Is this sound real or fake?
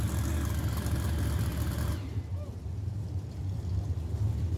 real